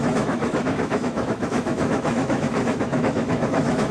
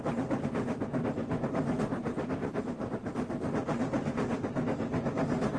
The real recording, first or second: second